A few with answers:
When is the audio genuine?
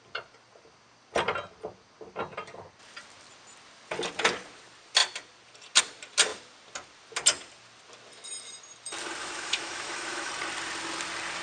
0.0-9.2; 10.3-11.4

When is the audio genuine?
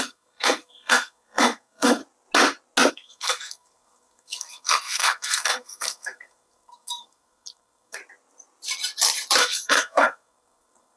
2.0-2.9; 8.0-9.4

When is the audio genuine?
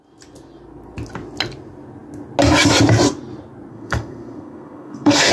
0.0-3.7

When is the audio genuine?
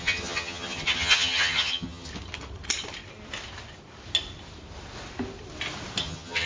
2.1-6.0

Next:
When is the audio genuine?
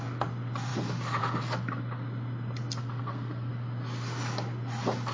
0.0-2.8; 3.5-5.1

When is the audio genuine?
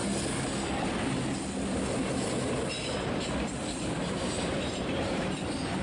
0.0-4.0; 5.3-5.8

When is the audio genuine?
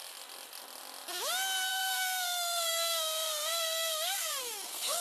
0.0-1.7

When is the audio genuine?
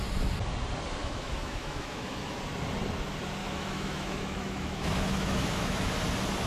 0.0-1.0; 2.4-3.4; 5.9-6.5